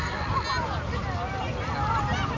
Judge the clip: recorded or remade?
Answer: recorded